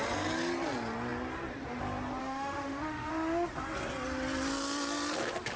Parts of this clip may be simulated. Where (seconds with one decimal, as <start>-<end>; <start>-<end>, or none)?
2.2-3.1